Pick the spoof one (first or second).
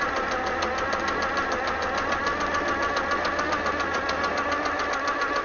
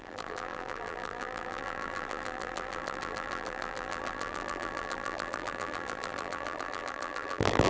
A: second